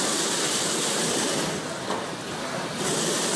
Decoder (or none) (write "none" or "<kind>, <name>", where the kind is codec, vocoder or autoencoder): none